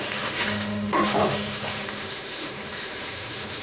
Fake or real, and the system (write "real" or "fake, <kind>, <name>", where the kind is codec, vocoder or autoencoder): fake, autoencoder, DAC-VAE